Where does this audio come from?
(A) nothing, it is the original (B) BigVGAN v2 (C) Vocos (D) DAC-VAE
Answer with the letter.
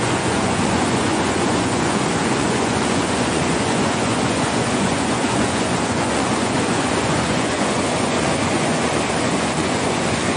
C